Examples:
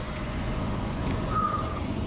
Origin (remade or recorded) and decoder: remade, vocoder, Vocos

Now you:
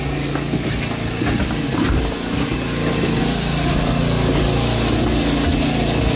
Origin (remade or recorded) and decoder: recorded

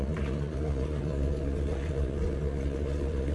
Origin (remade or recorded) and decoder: remade, vocoder, Vocos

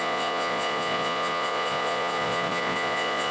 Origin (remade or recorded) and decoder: remade, vocoder, Vocos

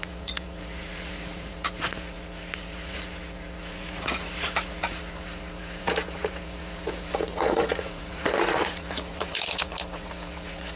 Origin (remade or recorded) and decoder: remade, vocoder, Vocos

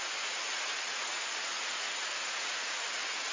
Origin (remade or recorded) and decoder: remade, vocoder, Vocos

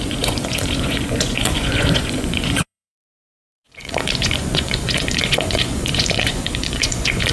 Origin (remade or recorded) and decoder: remade, vocoder, Vocos